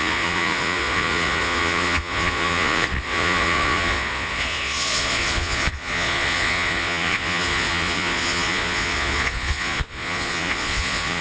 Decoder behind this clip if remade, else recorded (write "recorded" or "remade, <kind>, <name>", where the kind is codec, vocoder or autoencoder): remade, vocoder, Vocos